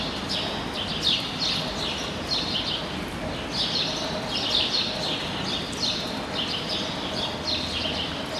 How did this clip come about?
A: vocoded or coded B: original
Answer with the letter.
B